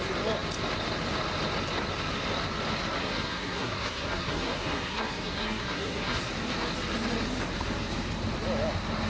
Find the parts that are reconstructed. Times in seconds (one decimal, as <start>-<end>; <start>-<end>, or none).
3.0-6.3